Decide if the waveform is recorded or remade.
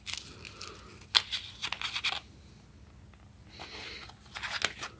recorded